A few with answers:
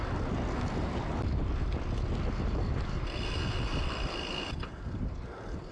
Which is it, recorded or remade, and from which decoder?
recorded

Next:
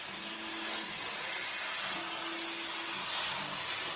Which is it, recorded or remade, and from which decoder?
recorded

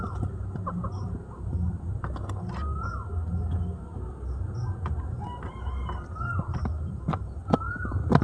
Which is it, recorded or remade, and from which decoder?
recorded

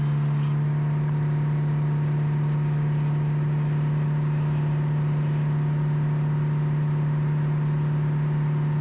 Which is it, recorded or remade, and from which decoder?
recorded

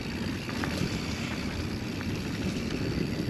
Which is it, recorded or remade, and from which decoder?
recorded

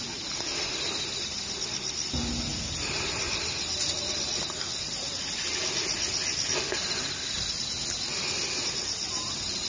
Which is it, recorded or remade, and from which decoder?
recorded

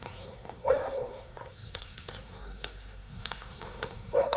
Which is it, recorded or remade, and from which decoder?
remade, codec, SNAC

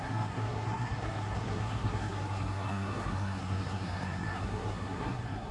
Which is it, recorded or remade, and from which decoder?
remade, codec, SNAC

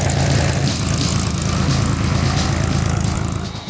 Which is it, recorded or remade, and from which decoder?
recorded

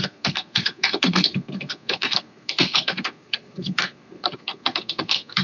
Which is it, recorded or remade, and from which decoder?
remade, codec, SNAC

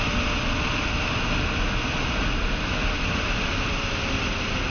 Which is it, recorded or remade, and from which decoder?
recorded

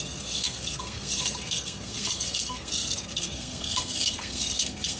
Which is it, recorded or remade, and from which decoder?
remade, codec, SNAC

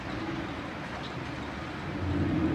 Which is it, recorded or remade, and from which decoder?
recorded